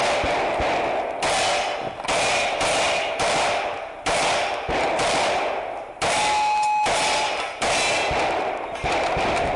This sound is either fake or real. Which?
real